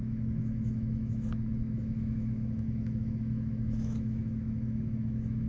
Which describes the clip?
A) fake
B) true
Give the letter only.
A